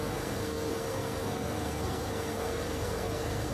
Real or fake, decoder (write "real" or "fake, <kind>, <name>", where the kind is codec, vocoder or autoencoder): fake, codec, SNAC